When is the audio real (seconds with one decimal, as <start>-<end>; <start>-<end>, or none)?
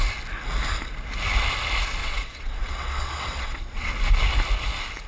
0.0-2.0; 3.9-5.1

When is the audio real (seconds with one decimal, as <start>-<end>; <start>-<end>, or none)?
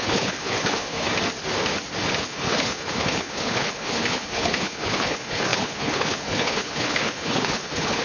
1.1-2.2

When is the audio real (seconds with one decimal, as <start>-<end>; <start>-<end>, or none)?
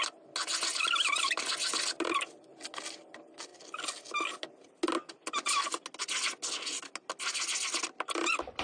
0.0-8.6